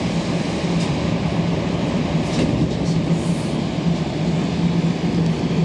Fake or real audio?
real